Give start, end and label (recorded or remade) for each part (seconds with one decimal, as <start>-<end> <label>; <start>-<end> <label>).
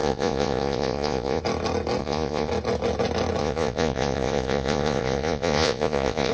0.0-1.4 remade; 1.4-2.0 recorded; 2.0-2.5 remade; 2.5-3.4 recorded; 3.4-6.3 remade